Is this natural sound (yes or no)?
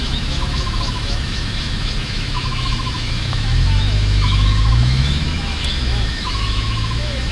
no